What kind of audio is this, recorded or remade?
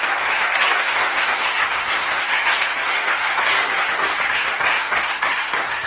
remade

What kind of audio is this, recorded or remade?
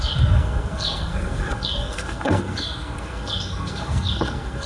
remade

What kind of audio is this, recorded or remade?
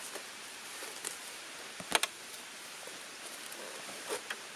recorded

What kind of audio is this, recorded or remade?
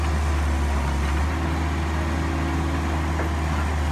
recorded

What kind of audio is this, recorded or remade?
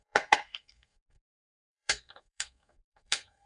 remade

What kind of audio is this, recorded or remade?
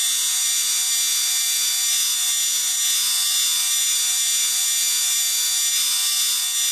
recorded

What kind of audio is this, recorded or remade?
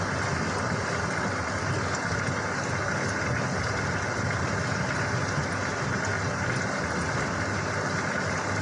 recorded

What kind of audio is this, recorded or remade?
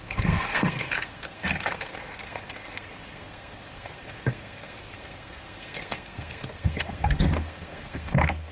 remade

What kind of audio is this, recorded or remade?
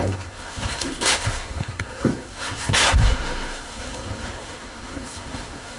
remade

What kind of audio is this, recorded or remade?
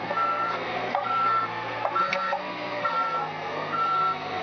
remade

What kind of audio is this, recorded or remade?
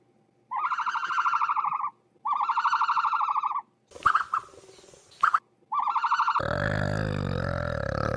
recorded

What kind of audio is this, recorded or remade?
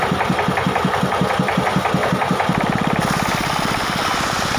recorded